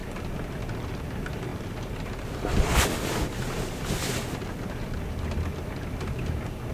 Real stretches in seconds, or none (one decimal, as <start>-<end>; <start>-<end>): 0.0-6.7

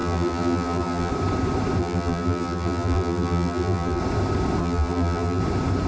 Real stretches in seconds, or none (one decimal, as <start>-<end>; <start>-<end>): 1.1-1.8; 4.0-4.6; 5.4-5.9

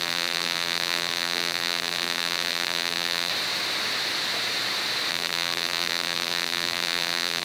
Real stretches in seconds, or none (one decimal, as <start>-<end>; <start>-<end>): 3.3-5.1